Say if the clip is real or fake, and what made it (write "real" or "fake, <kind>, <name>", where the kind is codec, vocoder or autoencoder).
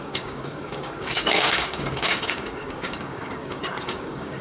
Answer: fake, codec, DAC